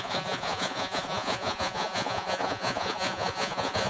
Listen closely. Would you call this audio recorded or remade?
remade